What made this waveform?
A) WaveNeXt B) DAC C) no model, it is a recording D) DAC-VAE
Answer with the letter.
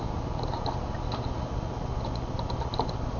C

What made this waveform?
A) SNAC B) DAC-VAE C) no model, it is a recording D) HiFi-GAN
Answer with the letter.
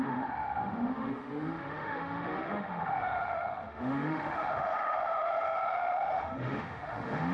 B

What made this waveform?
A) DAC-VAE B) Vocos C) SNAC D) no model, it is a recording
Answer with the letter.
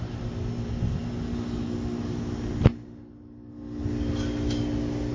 D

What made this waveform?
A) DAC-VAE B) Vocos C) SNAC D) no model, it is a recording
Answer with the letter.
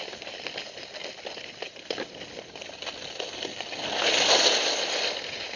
D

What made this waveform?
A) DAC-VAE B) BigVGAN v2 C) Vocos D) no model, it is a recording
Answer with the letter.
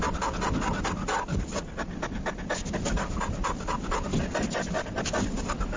D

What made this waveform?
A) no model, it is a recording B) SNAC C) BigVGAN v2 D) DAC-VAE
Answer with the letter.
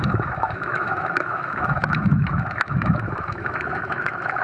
D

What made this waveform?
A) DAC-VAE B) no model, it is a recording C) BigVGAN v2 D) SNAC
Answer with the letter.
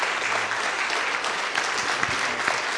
B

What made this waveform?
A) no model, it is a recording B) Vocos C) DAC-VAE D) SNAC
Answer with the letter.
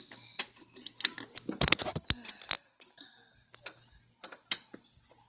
A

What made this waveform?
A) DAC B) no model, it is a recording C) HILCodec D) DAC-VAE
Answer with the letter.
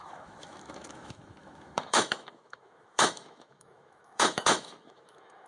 D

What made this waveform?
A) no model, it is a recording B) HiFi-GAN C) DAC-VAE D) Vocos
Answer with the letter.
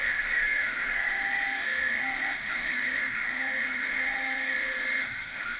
C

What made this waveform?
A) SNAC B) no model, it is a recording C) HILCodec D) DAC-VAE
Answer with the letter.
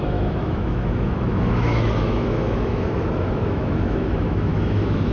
D